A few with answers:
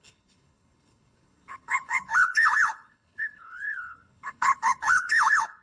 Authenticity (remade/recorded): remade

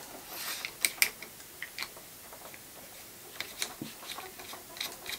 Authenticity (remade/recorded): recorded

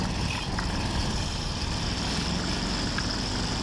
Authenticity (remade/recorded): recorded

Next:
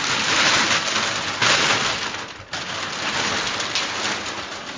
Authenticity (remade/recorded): recorded